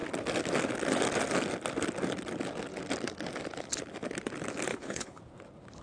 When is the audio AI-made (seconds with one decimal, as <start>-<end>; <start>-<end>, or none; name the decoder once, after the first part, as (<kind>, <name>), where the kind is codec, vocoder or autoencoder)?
4.7-5.2 (codec, HILCodec)